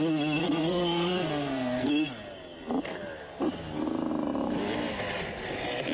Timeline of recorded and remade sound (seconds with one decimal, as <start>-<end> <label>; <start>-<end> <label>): 0.0-0.4 recorded; 0.4-1.9 remade; 1.9-5.9 recorded